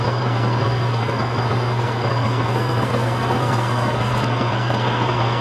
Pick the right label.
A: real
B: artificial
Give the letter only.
B